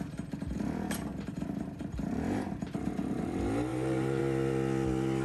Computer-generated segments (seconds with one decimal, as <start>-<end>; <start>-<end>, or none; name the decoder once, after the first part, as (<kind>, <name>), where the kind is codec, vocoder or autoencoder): 1.1-2.9 (vocoder, BigVGAN v2); 3.7-4.2